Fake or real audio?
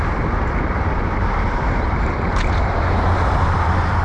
fake